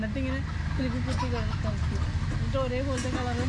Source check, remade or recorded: recorded